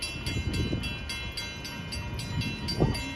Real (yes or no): yes